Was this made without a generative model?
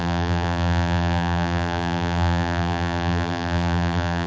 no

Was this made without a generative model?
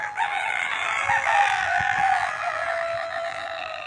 no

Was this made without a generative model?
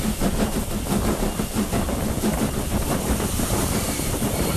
yes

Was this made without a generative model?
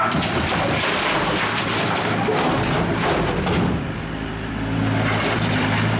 no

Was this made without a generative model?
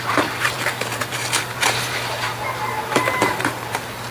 no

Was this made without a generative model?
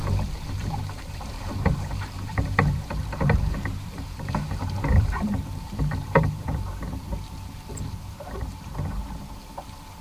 no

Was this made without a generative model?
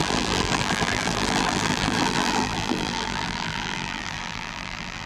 no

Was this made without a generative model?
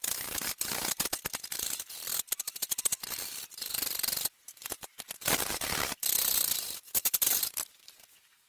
no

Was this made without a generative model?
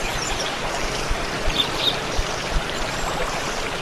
no